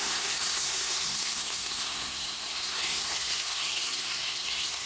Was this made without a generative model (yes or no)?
no